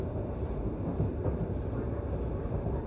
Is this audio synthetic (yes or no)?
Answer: no